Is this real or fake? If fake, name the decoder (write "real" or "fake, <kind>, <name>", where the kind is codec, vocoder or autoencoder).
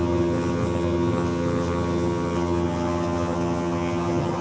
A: fake, vocoder, HiFi-GAN